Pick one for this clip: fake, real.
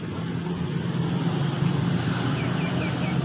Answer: real